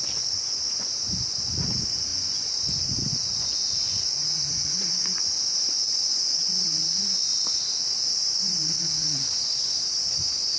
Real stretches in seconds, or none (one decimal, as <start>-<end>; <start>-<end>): 7.3-8.0